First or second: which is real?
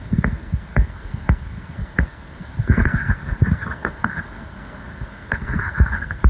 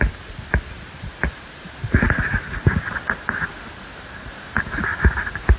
second